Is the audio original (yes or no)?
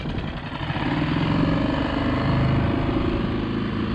yes